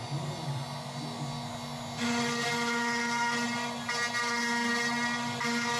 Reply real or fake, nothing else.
real